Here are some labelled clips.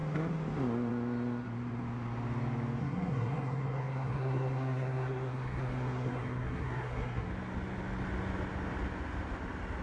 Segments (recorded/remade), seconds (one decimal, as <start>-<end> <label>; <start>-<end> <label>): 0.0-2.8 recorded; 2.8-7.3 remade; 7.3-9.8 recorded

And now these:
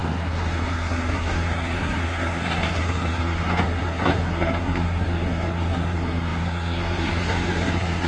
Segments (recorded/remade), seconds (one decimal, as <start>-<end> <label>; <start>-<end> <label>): 0.0-8.1 remade

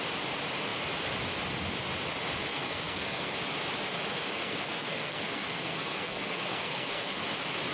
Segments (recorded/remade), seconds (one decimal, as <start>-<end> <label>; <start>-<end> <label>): 0.0-2.5 recorded; 2.5-3.3 remade; 3.3-4.1 recorded; 4.1-7.2 remade; 7.2-7.7 recorded